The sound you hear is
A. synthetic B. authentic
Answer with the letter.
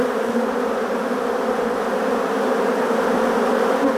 B